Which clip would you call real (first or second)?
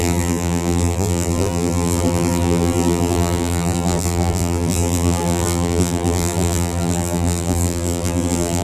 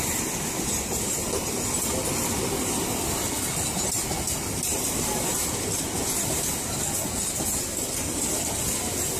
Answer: second